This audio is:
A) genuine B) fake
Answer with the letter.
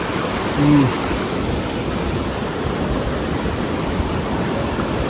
A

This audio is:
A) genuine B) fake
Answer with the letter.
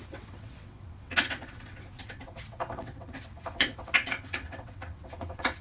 B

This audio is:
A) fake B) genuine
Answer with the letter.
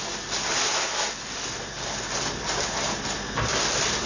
B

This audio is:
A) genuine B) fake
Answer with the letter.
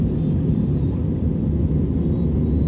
A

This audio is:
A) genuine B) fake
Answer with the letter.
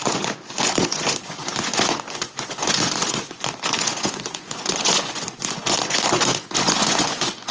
B